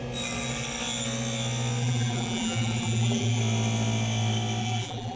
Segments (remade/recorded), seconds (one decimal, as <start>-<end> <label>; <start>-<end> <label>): 0.0-1.8 recorded; 1.8-3.4 remade; 3.4-4.6 recorded; 4.6-5.2 remade